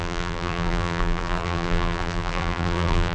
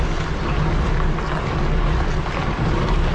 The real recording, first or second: second